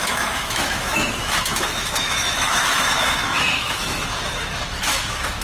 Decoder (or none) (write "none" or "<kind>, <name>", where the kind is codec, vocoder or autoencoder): autoencoder, DAC-VAE